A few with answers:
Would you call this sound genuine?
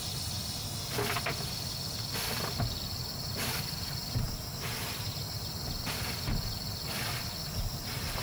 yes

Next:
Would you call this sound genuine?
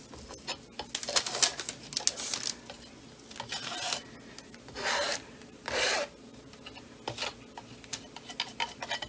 yes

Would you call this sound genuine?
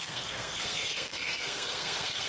no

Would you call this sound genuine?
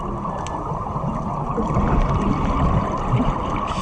yes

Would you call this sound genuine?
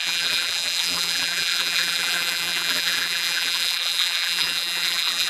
no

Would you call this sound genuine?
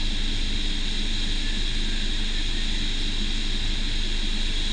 yes